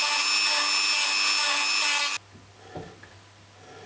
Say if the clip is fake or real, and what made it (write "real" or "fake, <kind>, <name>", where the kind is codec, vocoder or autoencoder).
real